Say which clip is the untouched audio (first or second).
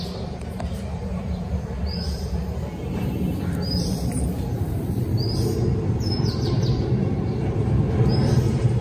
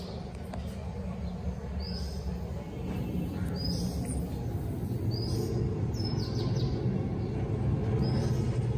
second